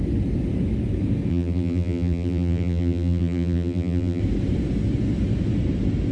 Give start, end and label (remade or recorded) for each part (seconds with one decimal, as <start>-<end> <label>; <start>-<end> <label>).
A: 0.0-1.3 recorded; 1.3-4.2 remade; 4.2-6.1 recorded